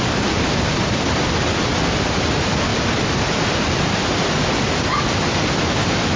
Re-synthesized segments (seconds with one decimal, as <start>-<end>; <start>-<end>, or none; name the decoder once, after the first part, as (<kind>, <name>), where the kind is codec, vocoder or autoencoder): none